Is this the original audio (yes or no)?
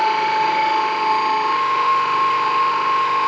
no